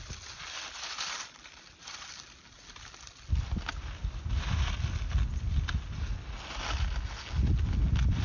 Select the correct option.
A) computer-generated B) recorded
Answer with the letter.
B